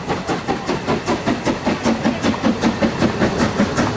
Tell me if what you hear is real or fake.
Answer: real